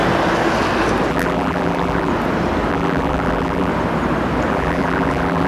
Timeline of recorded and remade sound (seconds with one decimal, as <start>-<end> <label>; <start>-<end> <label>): 0.0-1.1 recorded; 1.1-2.1 remade; 2.1-2.7 recorded; 2.7-3.7 remade; 3.7-4.5 recorded; 4.5-5.5 remade